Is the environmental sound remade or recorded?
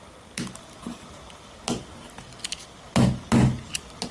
recorded